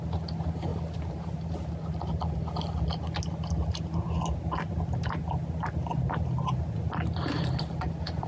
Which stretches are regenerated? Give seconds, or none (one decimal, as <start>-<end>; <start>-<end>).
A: none